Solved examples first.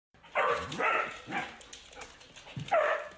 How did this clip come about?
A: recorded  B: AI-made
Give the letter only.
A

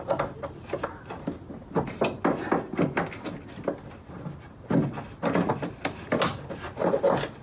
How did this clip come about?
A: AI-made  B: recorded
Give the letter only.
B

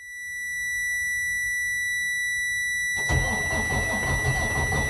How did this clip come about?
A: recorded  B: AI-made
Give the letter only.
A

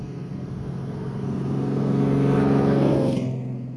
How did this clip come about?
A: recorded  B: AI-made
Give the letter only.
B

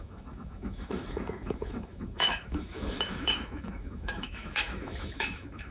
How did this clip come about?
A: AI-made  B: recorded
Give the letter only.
A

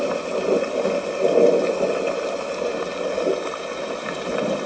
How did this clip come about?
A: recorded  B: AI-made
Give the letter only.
A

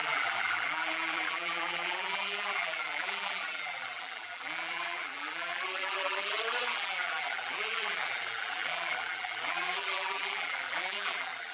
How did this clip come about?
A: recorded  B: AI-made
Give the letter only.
B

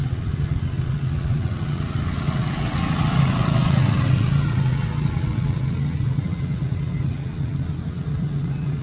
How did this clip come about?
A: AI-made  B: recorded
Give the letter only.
A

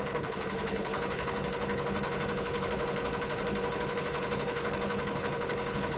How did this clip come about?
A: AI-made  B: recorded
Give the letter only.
A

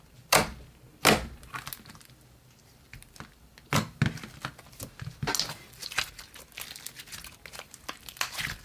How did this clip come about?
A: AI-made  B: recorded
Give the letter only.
B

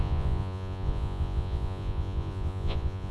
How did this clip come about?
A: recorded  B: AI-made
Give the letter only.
B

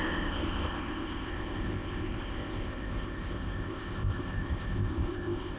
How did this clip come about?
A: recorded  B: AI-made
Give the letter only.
B